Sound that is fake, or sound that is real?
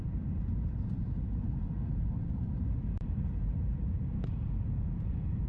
fake